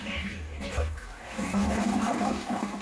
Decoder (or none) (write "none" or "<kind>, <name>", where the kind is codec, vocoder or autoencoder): codec, DAC